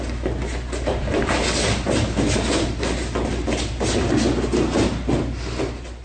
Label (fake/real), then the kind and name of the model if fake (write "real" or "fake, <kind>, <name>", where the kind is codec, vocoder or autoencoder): real